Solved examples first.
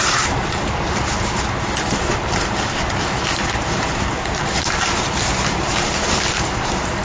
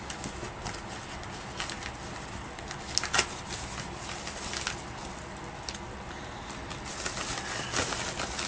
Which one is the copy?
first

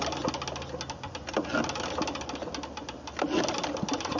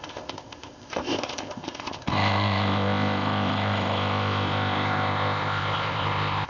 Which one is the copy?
second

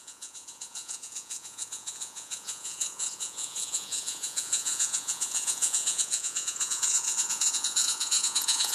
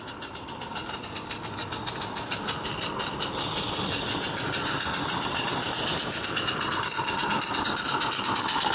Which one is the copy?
first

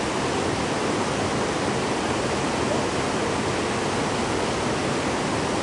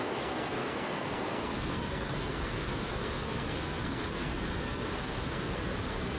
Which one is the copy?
second